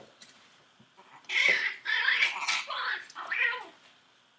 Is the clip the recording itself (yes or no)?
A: yes